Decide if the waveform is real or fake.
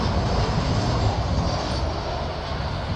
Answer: real